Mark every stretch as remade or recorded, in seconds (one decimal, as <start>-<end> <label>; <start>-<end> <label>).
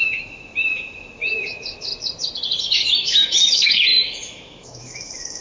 0.0-1.9 remade; 1.9-2.6 recorded; 2.6-5.4 remade